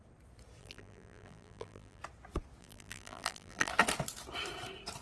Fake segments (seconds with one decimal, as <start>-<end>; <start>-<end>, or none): 0.6-2.0; 2.6-3.7